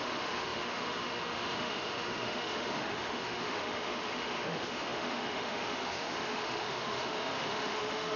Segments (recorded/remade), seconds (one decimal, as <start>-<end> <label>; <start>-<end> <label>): 0.0-8.2 remade